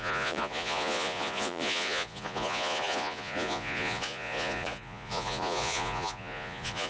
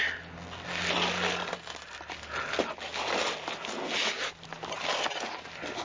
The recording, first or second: second